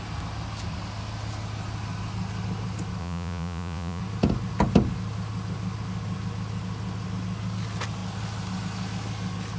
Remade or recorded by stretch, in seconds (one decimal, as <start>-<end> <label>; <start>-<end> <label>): 0.0-3.0 recorded; 3.0-4.0 remade; 4.0-9.6 recorded